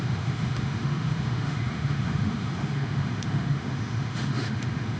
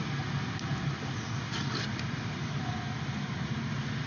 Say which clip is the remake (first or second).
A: first